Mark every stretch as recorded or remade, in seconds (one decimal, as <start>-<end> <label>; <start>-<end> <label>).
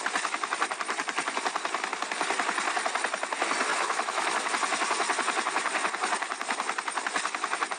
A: 0.0-3.7 recorded; 3.7-4.5 remade; 4.5-7.8 recorded